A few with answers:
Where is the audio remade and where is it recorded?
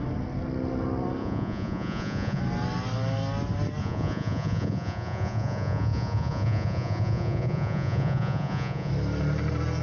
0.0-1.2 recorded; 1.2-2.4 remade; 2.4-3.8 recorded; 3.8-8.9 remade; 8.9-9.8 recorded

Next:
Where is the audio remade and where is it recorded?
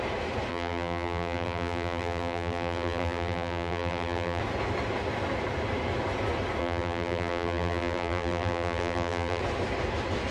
0.0-0.5 recorded; 0.5-4.4 remade; 4.4-6.6 recorded; 6.6-9.4 remade; 9.4-10.3 recorded